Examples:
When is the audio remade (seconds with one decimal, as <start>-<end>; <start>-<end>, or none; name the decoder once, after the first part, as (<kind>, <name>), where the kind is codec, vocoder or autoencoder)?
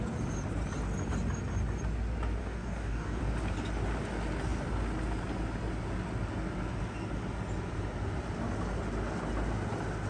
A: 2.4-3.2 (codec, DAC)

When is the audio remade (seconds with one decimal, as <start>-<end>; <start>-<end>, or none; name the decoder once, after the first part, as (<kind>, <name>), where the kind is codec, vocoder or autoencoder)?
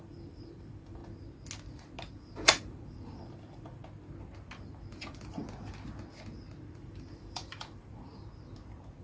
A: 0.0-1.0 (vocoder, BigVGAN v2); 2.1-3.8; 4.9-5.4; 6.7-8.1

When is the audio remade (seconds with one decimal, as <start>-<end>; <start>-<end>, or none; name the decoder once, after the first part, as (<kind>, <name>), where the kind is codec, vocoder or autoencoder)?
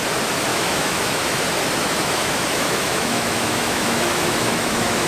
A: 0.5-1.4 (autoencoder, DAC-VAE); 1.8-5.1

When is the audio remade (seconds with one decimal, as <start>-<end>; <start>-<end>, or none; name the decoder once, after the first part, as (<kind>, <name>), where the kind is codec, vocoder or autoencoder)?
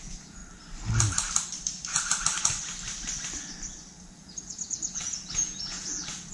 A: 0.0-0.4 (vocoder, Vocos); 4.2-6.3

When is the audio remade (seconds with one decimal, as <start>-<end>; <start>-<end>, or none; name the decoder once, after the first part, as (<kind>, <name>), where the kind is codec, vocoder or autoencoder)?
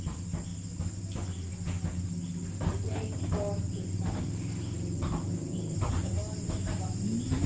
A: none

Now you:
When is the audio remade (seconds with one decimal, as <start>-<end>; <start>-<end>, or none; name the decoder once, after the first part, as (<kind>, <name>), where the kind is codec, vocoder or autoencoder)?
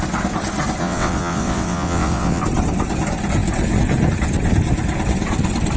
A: 0.8-2.4 (vocoder, WaveNeXt)